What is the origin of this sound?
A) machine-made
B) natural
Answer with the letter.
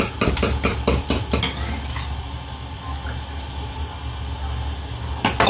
B